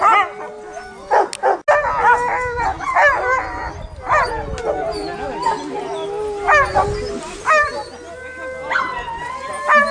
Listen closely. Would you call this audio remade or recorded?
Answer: recorded